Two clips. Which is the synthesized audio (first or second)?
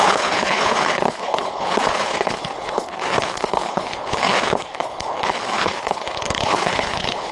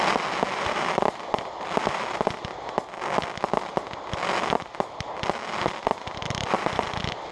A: first